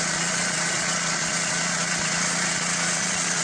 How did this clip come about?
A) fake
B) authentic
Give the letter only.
A